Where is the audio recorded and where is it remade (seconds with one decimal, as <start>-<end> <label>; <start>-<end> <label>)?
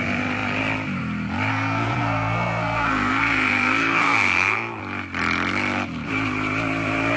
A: 0.0-1.5 recorded; 1.5-4.8 remade; 4.8-7.2 recorded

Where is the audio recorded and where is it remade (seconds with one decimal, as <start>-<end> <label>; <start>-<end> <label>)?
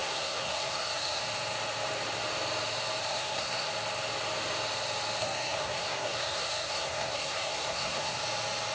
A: 0.0-1.2 remade; 1.2-3.0 recorded; 3.0-3.7 remade; 3.7-5.2 recorded; 5.2-8.2 remade; 8.2-8.7 recorded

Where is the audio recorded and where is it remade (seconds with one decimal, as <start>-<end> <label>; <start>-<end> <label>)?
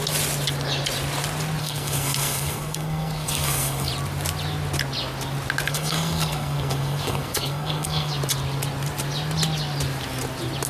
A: 0.0-1.6 recorded; 1.6-3.9 remade; 3.9-5.7 recorded; 5.7-8.1 remade; 8.1-10.7 recorded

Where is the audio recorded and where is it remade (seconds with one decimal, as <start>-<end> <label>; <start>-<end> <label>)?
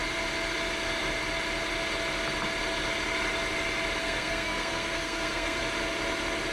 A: 0.0-4.0 recorded; 4.0-5.6 remade; 5.6-6.5 recorded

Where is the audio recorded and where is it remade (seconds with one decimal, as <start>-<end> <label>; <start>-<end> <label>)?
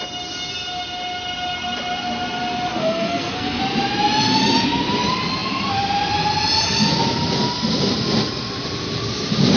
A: 0.0-2.7 recorded; 2.7-3.6 remade; 3.6-9.6 recorded